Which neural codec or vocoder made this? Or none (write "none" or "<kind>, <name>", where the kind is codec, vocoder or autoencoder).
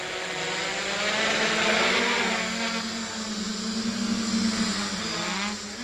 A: none